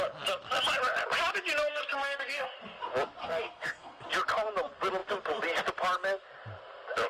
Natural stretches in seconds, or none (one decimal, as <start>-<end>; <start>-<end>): 0.0-1.7; 2.5-3.2; 4.0-7.1